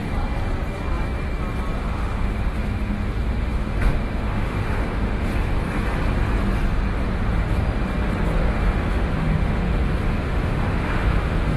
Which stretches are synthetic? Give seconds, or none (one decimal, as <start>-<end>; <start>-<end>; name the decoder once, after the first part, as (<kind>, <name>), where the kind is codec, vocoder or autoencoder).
1.8-5.3 (autoencoder, DAC-VAE); 8.5-11.6